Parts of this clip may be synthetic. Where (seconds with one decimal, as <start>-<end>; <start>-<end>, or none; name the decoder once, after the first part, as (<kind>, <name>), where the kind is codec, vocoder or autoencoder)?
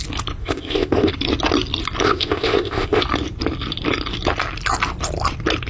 0.4-1.1 (codec, ZipCodec); 2.0-3.0